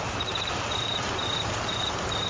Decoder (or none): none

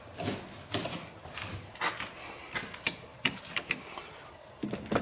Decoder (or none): none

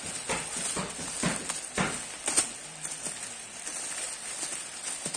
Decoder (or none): none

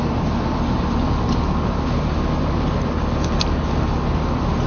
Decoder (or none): none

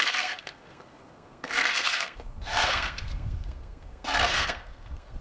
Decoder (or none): codec, SNAC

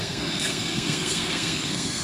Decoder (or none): codec, SNAC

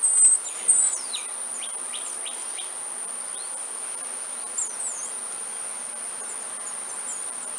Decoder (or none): none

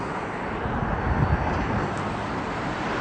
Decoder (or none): vocoder, BigVGAN v2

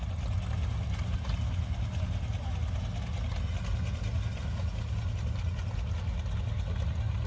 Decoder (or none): none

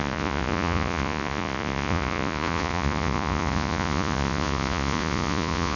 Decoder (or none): vocoder, Vocos